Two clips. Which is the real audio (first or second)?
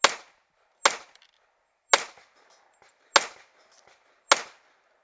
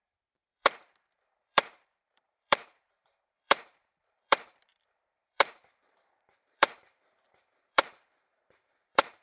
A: first